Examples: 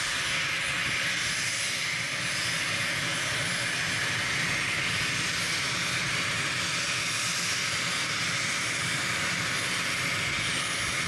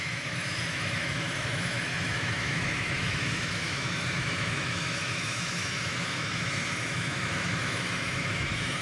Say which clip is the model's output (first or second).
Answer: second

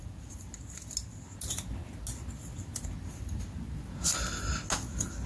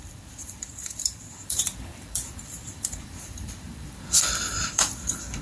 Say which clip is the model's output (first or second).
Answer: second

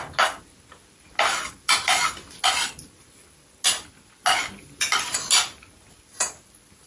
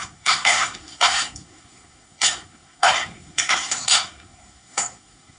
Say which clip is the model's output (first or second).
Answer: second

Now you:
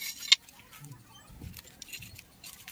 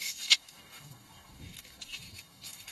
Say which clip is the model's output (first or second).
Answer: second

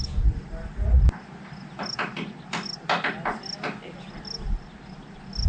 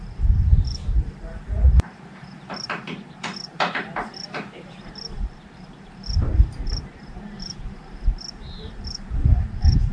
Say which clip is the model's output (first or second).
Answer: second